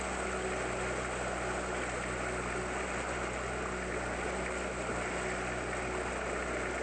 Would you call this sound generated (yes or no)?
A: no